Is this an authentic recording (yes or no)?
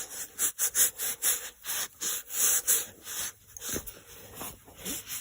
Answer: yes